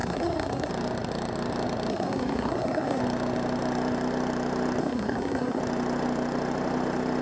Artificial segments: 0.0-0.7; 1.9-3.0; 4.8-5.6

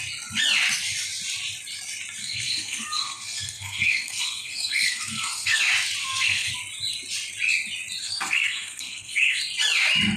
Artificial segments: 2.2-5.6; 6.0-6.5; 8.0-9.4